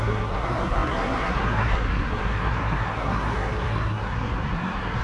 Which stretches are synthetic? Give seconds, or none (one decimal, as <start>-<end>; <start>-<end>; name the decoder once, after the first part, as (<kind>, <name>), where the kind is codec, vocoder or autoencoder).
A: 0.0-5.0 (codec, SNAC)